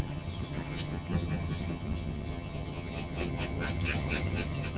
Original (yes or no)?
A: no